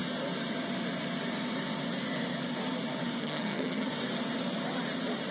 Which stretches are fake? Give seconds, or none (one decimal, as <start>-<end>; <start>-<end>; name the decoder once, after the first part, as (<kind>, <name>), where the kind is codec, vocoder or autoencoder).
3.2-3.9 (vocoder, HiFi-GAN)